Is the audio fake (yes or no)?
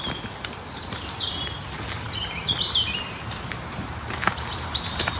yes